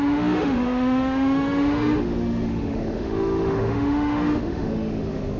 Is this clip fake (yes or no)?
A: yes